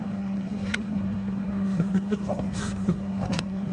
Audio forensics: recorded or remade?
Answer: remade